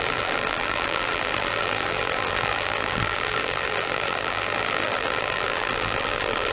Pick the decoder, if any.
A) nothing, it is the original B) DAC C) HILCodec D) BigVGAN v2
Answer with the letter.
D